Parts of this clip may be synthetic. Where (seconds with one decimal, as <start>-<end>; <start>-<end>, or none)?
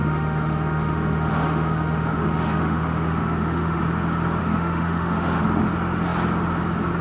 0.0-3.8; 4.4-5.4